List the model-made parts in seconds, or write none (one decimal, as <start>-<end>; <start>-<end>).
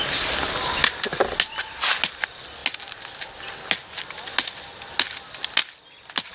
none